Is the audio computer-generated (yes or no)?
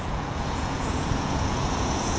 yes